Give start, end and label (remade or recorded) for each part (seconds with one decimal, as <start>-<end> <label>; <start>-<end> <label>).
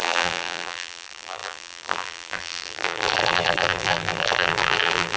0.0-5.2 remade